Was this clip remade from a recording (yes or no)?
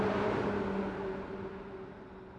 no